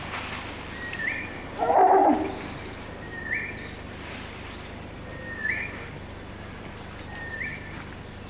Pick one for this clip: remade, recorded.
recorded